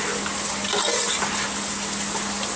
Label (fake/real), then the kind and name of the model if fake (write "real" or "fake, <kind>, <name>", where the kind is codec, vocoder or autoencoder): real